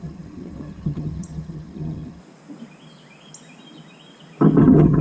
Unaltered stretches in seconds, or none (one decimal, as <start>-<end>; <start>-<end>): 2.2-4.6